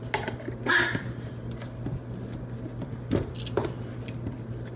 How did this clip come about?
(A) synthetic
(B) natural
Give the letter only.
B